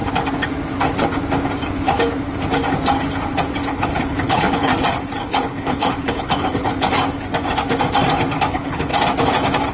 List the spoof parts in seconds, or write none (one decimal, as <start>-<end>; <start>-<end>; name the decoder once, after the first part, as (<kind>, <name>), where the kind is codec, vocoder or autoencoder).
3.6-4.7 (codec, HILCodec); 5.2-6.7; 8.5-8.9